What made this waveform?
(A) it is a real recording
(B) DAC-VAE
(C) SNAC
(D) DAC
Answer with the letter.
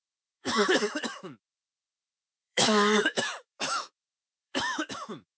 B